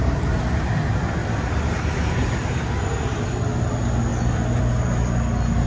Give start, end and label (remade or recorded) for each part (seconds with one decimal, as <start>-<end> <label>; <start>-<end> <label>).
0.0-1.2 recorded; 1.2-3.2 remade; 3.2-5.7 recorded